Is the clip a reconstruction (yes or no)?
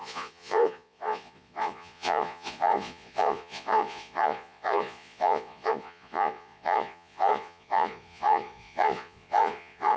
yes